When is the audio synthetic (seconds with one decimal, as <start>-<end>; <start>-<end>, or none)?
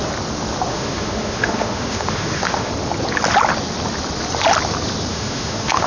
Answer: 0.7-2.7; 5.1-5.9